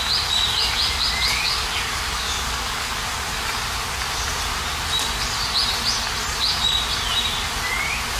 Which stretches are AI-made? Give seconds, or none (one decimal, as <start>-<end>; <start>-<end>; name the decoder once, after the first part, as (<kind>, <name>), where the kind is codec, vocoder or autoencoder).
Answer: 1.3-2.9 (codec, DAC)

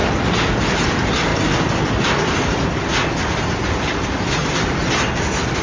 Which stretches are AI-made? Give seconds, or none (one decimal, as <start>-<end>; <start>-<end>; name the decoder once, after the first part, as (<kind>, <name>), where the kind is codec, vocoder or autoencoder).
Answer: 0.0-4.4 (vocoder, BigVGAN v2); 5.1-5.6

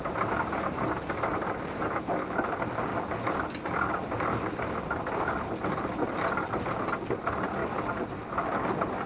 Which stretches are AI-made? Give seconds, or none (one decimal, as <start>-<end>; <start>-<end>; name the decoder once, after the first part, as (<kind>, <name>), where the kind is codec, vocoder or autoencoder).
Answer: none

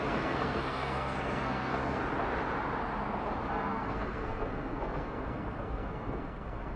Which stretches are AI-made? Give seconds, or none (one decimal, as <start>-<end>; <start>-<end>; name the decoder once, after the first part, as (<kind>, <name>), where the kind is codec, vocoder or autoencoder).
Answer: 0.0-2.0 (codec, SNAC); 3.5-6.8

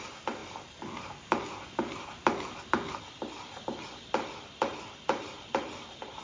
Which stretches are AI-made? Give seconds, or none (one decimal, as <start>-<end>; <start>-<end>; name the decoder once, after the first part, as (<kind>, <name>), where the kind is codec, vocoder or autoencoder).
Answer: none